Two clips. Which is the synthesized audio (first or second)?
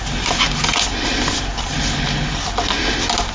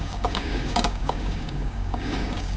second